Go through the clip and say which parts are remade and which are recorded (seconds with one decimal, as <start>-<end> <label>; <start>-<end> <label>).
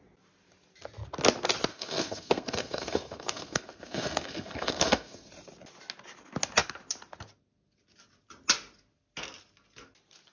0.0-1.7 recorded; 1.7-5.3 remade; 5.3-10.3 recorded